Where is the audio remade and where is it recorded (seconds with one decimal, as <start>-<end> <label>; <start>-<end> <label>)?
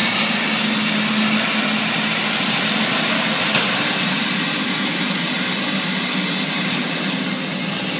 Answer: 0.0-8.0 recorded